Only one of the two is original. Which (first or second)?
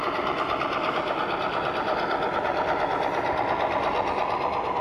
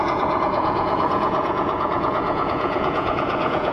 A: first